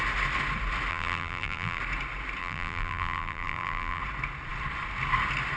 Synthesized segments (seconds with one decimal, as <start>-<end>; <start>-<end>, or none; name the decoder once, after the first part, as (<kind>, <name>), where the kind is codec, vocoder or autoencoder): 0.9-1.8 (vocoder, BigVGAN v2); 2.4-4.0